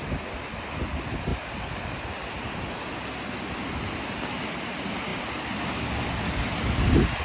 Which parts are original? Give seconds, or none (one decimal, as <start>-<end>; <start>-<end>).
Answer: 0.0-7.2